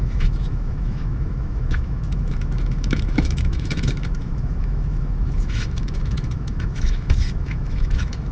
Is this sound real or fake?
fake